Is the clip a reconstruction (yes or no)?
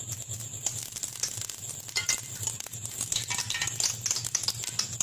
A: no